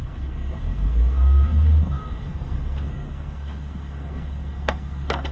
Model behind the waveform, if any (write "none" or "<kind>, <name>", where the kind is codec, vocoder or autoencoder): codec, SNAC